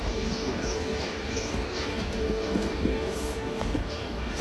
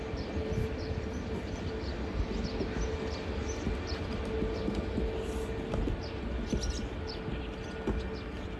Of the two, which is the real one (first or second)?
second